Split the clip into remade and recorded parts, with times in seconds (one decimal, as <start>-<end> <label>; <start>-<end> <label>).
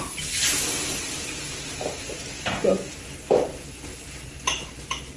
0.0-5.2 recorded